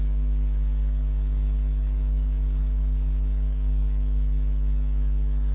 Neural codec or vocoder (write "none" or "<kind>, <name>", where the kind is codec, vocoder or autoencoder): codec, DAC